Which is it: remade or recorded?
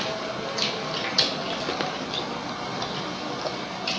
recorded